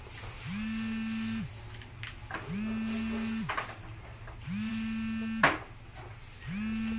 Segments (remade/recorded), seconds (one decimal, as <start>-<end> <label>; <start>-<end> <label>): 0.0-7.0 recorded